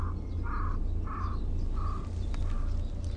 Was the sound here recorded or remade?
recorded